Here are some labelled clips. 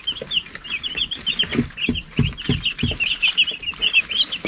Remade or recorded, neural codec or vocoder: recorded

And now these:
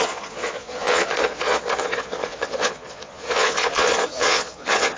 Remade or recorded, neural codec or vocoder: remade, vocoder, Vocos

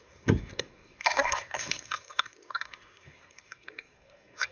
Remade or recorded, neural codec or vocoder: remade, codec, SNAC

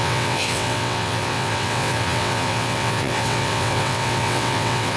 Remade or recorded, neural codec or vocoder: remade, vocoder, WaveNeXt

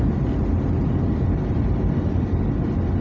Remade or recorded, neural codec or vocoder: recorded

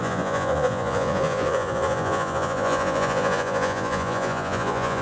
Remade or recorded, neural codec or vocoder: remade, vocoder, Vocos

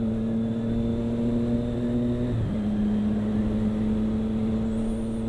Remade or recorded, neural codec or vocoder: recorded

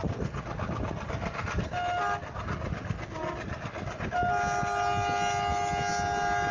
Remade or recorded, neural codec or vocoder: recorded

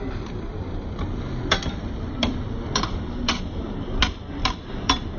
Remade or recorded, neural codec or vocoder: remade, vocoder, BigVGAN v2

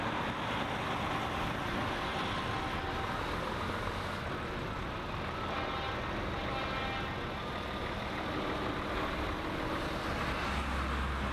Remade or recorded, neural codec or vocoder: recorded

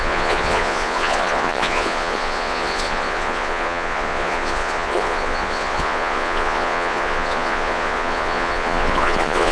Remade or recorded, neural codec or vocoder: remade, vocoder, Vocos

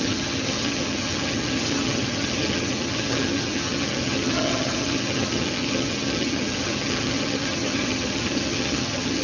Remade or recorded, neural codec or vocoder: remade, vocoder, HiFi-GAN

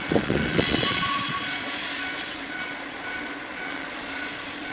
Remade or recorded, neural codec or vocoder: remade, vocoder, Vocos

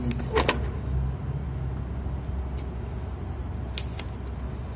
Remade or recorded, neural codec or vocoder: recorded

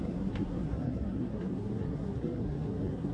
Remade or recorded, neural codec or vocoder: remade, codec, SNAC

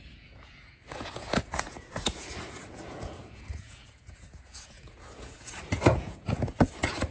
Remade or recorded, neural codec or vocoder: remade, vocoder, Vocos